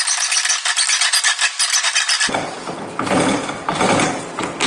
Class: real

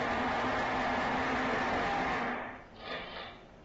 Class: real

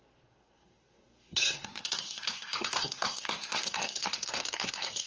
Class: fake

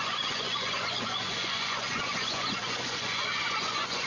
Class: fake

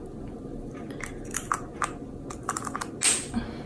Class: real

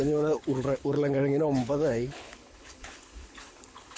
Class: fake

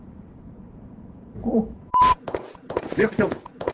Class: fake